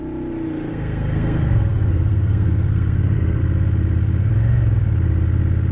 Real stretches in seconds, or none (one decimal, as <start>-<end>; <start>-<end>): 0.0-0.7; 3.4-5.7